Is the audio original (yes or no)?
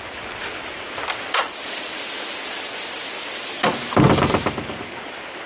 yes